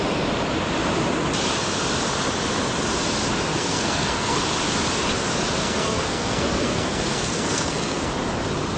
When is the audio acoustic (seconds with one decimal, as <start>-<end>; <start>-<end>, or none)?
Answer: 0.0-3.5; 4.4-5.6; 8.1-8.8